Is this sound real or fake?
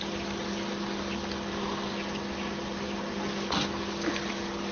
real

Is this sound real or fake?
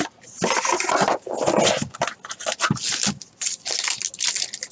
real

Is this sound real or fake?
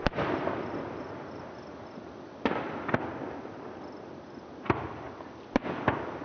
real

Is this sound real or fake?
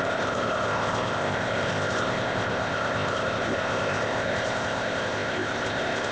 fake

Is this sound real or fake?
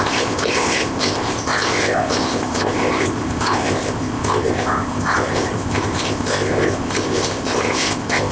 fake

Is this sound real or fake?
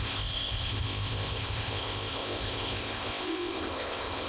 fake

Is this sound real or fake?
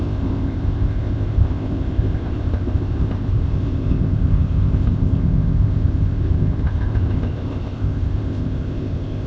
fake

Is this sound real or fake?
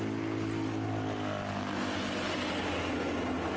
real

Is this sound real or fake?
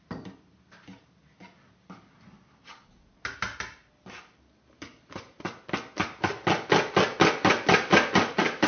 real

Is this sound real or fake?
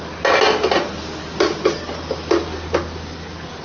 real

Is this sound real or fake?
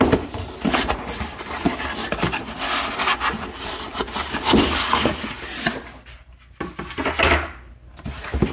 real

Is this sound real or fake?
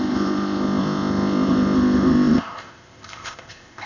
fake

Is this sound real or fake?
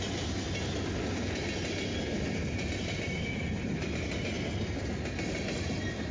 real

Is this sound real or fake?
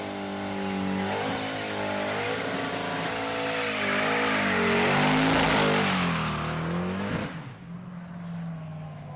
real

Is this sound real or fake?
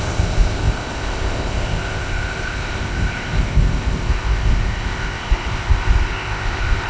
fake